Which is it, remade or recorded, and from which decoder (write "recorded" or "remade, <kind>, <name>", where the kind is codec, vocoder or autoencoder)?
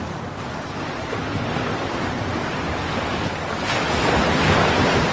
recorded